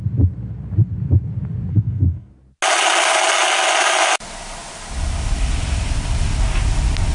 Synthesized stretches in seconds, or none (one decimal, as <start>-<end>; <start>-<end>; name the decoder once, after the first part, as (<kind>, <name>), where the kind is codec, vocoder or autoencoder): 1.7-2.3 (codec, SNAC)